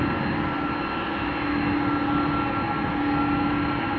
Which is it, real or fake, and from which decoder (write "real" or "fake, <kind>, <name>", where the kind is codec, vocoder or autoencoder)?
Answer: real